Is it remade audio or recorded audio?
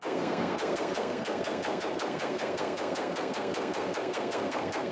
remade